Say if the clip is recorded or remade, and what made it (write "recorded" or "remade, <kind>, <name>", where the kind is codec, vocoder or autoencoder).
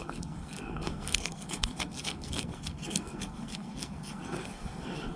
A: remade, codec, SNAC